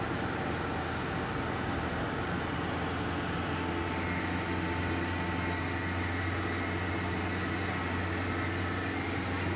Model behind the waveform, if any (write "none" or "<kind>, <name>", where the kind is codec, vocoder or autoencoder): none